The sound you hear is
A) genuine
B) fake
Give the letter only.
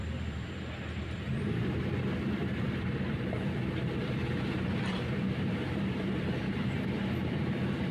B